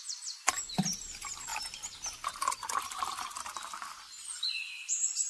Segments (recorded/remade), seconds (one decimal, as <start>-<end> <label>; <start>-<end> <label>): 0.0-5.3 recorded